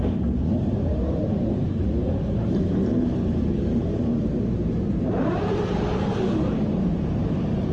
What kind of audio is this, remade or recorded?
remade